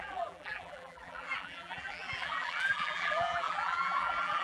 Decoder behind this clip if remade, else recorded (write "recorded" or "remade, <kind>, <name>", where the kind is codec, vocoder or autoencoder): remade, vocoder, BigVGAN v2